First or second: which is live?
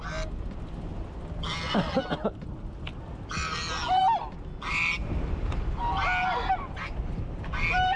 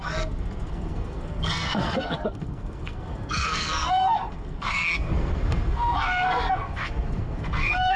first